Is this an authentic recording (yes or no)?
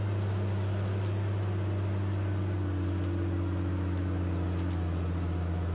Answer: yes